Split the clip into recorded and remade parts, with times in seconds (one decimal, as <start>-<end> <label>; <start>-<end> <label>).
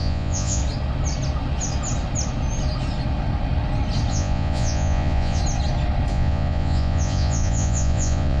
0.0-0.6 remade; 0.6-4.1 recorded; 4.1-5.4 remade; 5.4-6.1 recorded; 6.1-8.4 remade